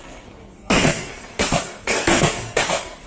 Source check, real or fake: fake